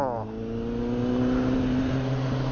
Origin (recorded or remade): recorded